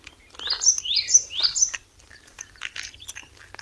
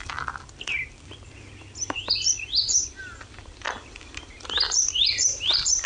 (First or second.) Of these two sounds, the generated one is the second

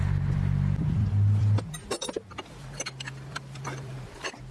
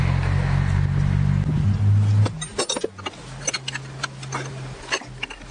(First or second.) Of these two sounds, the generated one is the first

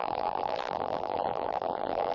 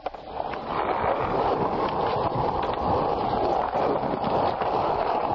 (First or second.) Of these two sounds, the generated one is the first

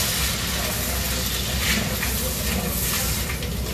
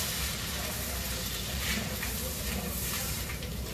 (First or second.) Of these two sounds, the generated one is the second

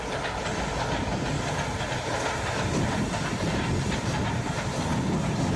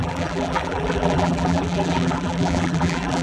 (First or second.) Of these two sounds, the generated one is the second